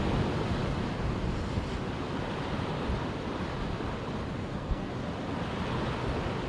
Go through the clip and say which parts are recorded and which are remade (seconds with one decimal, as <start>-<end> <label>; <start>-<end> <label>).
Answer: 0.0-4.4 recorded; 4.4-4.9 remade; 4.9-6.5 recorded